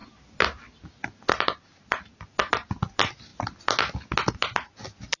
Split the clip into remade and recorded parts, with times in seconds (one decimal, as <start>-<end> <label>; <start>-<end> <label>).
0.0-5.2 recorded